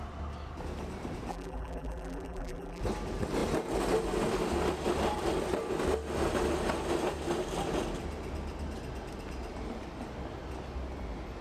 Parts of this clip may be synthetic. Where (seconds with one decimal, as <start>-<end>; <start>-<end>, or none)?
1.3-2.8